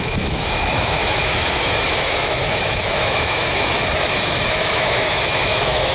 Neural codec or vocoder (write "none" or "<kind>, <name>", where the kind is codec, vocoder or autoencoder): autoencoder, DAC-VAE